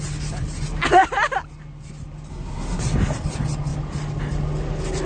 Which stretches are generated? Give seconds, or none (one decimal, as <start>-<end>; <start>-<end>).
2.3-2.8